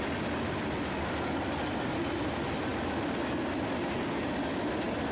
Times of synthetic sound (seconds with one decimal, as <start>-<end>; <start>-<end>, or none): none